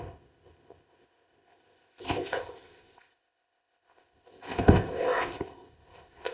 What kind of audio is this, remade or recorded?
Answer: remade